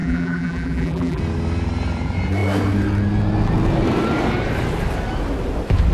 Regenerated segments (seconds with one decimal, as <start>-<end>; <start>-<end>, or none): 0.0-1.2